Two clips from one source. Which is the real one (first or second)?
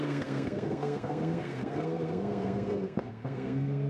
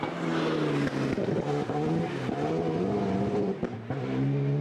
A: second